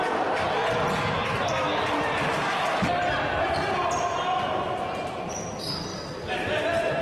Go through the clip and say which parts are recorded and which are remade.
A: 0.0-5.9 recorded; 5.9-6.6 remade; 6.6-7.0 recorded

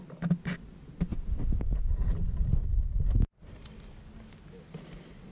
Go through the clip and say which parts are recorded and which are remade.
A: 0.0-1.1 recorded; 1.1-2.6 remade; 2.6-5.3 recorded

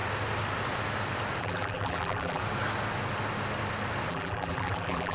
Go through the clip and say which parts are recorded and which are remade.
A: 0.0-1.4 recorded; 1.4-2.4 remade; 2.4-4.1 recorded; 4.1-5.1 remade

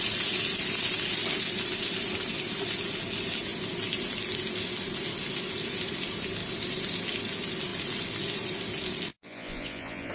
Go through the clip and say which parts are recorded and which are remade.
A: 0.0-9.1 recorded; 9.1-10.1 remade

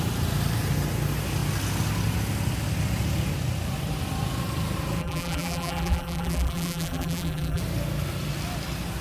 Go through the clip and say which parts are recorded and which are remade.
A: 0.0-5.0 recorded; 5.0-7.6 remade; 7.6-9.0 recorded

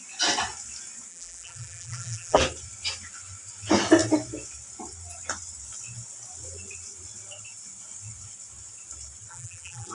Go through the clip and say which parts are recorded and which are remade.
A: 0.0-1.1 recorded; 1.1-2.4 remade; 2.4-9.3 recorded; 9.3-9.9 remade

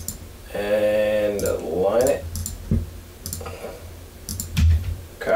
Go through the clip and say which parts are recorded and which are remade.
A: 0.0-4.3 recorded; 4.3-5.4 remade